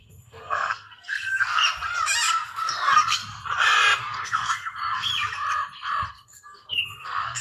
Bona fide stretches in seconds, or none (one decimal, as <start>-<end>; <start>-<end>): 1.6-2.3; 3.2-4.0; 5.1-6.1